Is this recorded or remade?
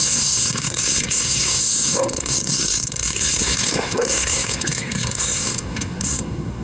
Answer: remade